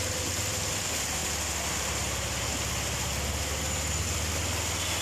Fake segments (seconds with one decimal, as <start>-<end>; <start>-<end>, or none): none